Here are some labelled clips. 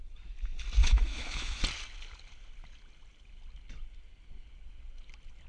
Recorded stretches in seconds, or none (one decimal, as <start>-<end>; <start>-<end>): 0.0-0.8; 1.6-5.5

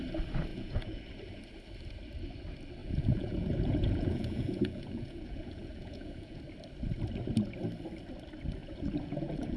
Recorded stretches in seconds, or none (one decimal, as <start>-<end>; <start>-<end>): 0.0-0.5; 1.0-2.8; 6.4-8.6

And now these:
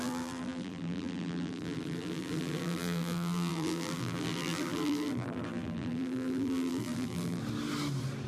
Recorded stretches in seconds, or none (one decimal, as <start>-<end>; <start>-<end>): 7.4-8.3

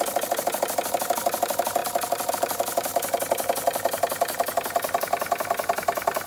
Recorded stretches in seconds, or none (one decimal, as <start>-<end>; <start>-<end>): 0.0-6.3

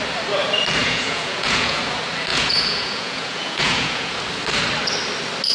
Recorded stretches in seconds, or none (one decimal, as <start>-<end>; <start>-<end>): 0.0-0.8; 1.8-2.3; 4.2-5.5

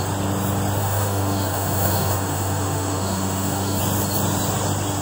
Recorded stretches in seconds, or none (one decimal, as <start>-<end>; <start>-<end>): 0.0-0.8; 3.8-5.0